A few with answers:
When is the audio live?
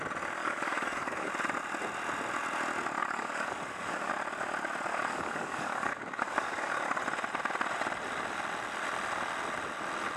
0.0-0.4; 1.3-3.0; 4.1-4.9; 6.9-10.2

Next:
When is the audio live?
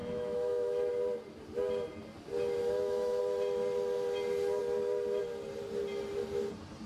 0.9-2.6; 3.2-6.9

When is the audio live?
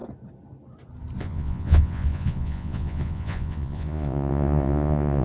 0.0-1.2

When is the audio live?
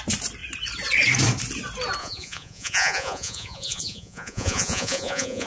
0.0-2.0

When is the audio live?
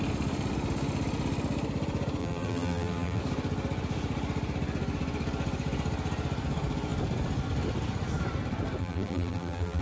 0.0-2.2; 3.2-8.8